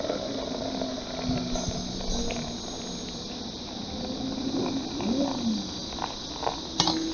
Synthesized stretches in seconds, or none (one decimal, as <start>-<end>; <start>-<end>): none